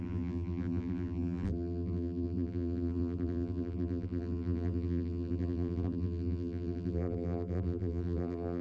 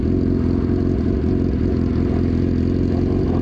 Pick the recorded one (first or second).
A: second